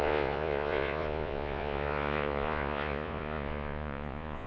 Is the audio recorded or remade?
remade